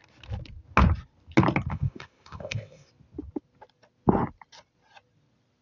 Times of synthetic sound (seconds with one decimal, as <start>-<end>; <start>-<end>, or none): 1.7-2.9